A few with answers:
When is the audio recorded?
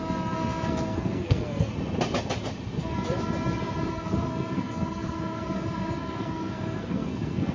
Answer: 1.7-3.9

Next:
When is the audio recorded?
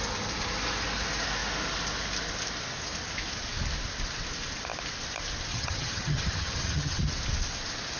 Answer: 0.0-5.5; 7.0-8.0